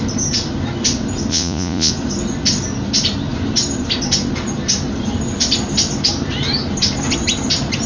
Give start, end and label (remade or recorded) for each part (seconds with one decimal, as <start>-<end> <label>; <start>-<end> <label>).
0.0-1.3 recorded; 1.3-1.9 remade; 1.9-7.9 recorded